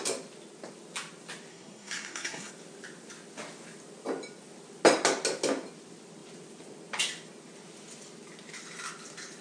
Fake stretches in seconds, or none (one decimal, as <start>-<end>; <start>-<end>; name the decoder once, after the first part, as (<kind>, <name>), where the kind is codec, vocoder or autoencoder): 1.5-2.5 (codec, SNAC)